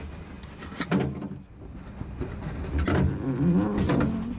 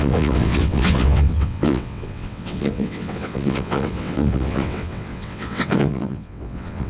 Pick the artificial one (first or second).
second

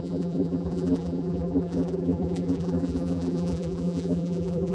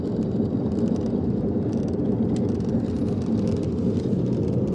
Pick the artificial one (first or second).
first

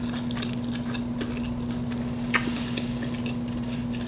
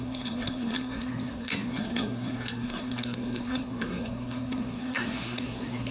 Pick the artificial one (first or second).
second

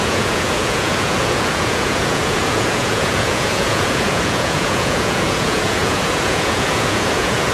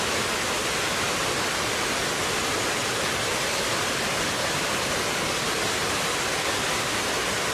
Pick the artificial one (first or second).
first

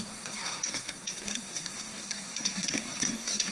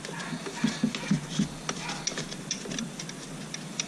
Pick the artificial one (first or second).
first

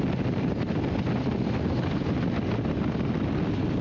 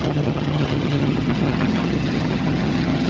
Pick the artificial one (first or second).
second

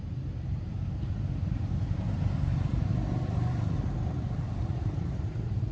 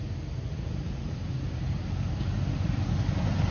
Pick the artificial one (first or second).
first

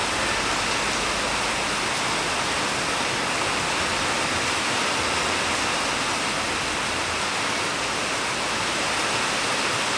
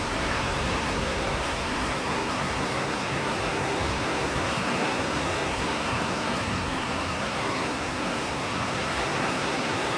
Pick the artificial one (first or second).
second